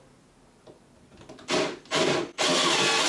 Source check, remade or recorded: recorded